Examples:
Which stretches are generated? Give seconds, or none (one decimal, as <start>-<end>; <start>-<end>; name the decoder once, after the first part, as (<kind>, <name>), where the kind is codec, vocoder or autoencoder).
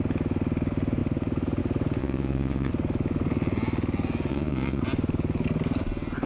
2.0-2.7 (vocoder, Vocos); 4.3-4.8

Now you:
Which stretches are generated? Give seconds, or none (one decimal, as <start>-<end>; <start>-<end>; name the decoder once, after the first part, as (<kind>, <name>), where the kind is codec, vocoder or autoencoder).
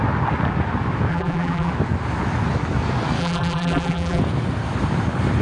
1.1-1.7 (vocoder, BigVGAN v2); 3.2-4.2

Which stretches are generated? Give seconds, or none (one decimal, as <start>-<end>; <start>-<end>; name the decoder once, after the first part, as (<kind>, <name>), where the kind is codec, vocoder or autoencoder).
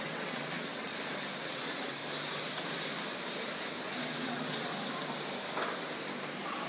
0.0-0.9 (vocoder, WaveNeXt); 1.4-2.0; 4.0-4.7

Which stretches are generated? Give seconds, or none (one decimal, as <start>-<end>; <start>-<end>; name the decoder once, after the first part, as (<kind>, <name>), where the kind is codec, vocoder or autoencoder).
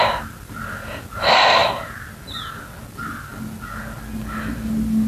none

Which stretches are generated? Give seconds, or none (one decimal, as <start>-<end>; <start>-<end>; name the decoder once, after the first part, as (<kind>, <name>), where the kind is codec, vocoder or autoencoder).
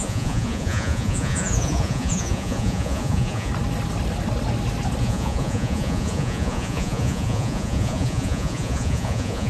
0.0-3.5 (vocoder, Vocos); 5.0-9.5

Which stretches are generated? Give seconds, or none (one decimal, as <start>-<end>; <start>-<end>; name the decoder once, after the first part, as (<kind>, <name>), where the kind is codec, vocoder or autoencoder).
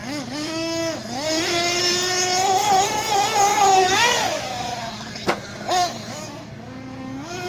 0.0-1.0 (codec, DAC); 3.5-7.5